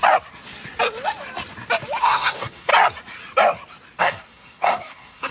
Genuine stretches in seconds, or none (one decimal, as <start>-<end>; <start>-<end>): 0.0-2.0; 2.7-4.0